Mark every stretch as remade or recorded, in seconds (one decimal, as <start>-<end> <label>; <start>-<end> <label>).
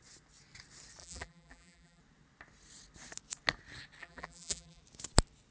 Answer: 0.0-1.0 recorded; 1.0-2.0 remade; 2.0-4.0 recorded; 4.0-4.8 remade; 4.8-5.5 recorded